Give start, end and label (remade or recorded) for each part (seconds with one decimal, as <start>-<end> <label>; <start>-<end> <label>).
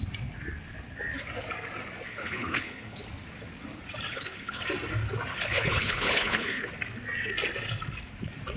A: 0.0-2.1 recorded; 2.1-3.0 remade; 3.0-4.1 recorded; 4.1-4.6 remade; 4.6-5.3 recorded; 5.3-6.7 remade; 6.7-8.6 recorded